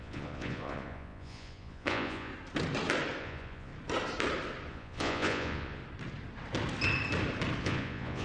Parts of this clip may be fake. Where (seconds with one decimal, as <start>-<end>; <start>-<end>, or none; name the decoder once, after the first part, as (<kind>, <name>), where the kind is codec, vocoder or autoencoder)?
0.0-2.3 (vocoder, Vocos); 3.2-3.7; 4.7-5.8; 7.6-8.2